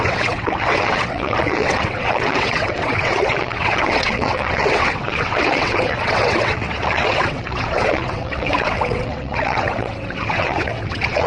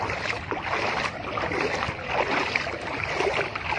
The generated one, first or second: first